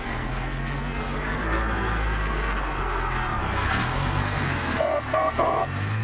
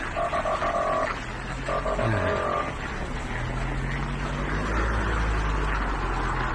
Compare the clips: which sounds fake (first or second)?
first